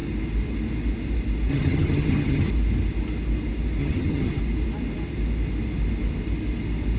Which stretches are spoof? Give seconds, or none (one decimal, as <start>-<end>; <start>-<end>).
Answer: 1.5-2.5; 3.8-4.4